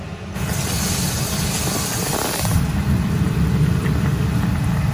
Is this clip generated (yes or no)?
no